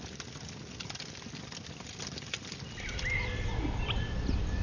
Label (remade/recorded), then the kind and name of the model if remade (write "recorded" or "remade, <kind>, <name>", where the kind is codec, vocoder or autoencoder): recorded